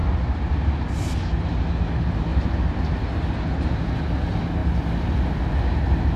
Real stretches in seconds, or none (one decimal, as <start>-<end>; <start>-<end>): 0.5-2.3; 3.0-4.6; 5.4-6.2